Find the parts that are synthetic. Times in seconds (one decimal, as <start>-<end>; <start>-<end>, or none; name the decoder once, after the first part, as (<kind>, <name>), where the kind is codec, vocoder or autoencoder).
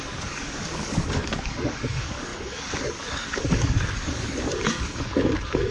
0.0-5.7 (codec, DAC)